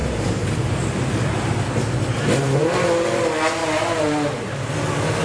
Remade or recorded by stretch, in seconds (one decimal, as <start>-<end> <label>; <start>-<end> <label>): 0.0-1.5 remade; 1.5-3.6 recorded; 3.6-4.5 remade; 4.5-5.2 recorded